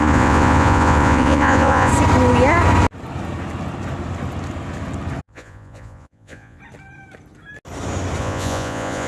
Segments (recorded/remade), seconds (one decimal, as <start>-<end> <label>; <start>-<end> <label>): 0.0-1.9 remade; 1.9-5.2 recorded; 5.2-6.6 remade; 6.6-8.2 recorded; 8.2-9.1 remade